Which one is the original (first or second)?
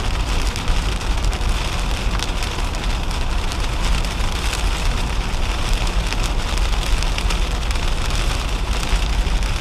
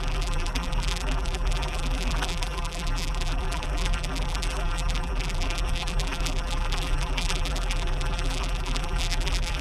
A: first